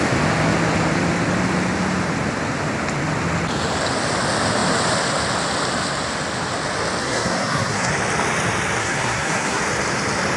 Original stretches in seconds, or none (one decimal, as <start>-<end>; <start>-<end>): 0.0-7.0; 7.9-8.8; 9.6-10.4